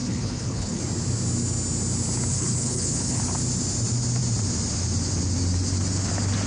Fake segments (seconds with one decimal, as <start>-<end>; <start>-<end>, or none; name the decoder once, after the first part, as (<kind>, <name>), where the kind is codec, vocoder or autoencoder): 0.0-0.8 (codec, HILCodec); 2.3-3.2